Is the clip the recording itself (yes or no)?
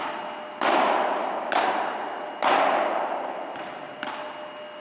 yes